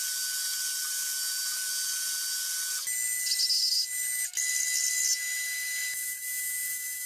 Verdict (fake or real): real